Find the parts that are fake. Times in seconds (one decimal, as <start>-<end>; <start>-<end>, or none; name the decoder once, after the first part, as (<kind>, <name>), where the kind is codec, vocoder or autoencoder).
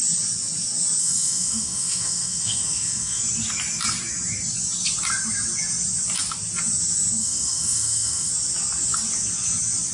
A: 1.0-3.2 (autoencoder, DAC-VAE); 7.2-8.3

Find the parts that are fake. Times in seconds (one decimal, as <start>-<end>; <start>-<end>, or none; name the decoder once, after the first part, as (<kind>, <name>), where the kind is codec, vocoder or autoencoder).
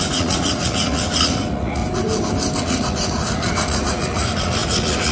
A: 0.0-1.8 (vocoder, Vocos); 2.6-5.1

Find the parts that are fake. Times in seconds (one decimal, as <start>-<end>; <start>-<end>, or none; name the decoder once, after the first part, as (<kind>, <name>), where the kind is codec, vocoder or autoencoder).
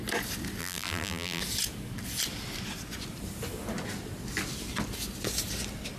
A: 0.6-1.4 (vocoder, BigVGAN v2)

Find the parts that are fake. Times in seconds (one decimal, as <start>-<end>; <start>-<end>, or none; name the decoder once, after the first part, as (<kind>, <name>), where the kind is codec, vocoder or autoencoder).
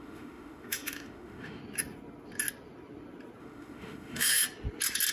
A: 0.0-1.6 (autoencoder, DAC-VAE); 3.4-4.4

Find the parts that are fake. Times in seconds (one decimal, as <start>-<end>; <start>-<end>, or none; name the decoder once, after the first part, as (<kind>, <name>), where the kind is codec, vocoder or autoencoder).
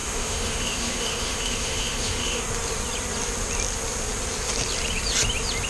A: 0.0-2.4 (autoencoder, DAC-VAE)